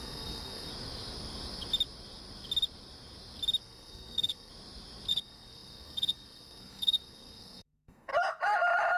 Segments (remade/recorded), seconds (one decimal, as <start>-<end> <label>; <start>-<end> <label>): 0.0-0.7 remade; 0.7-3.6 recorded; 3.6-4.5 remade; 4.5-5.1 recorded; 5.1-8.1 remade; 8.1-9.0 recorded